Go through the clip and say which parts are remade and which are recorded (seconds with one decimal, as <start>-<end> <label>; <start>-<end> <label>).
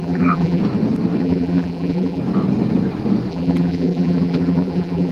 0.0-0.6 remade; 0.6-1.2 recorded; 1.2-2.2 remade; 2.2-3.3 recorded; 3.3-5.1 remade